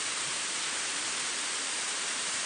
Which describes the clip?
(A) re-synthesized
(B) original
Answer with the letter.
A